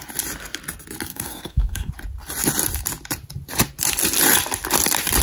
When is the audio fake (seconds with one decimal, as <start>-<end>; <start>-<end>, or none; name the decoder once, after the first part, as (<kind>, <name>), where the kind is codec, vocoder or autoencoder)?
1.1-1.9 (codec, SNAC)